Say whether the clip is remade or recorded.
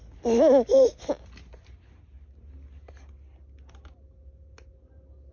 recorded